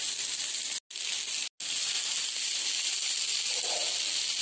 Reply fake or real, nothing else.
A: real